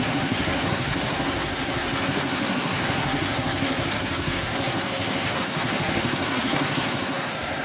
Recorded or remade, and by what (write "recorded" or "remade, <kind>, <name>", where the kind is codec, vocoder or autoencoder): remade, codec, SNAC